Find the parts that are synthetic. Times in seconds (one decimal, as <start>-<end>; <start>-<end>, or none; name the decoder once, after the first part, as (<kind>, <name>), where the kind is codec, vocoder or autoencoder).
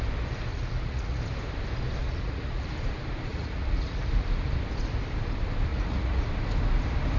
0.5-1.2 (vocoder, Vocos); 2.0-2.7; 3.3-4.1; 5.7-6.3